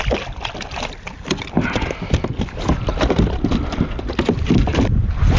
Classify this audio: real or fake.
real